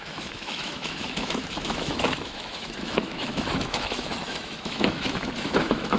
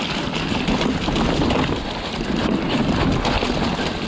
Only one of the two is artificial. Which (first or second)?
first